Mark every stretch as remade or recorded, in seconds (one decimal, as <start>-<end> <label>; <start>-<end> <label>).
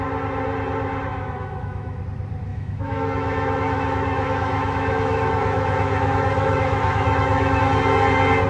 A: 0.0-1.1 recorded; 1.1-2.0 remade; 2.0-2.5 recorded; 2.5-7.6 remade; 7.6-8.5 recorded